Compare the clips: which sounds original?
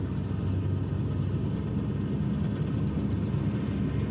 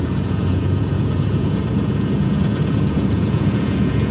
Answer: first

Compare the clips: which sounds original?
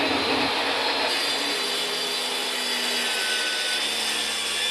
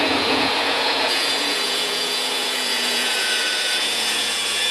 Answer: first